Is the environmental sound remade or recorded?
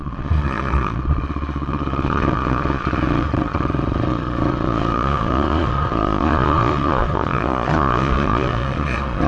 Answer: remade